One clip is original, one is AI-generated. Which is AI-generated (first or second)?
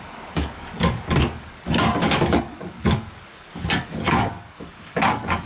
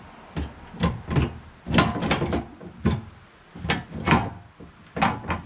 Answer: first